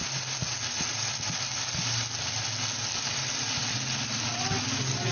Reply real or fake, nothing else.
real